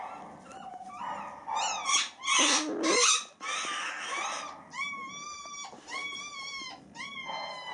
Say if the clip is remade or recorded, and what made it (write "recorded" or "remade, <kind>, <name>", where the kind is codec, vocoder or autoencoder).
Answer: recorded